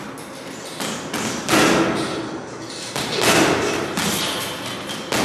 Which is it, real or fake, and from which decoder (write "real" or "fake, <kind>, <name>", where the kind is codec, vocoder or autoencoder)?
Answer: real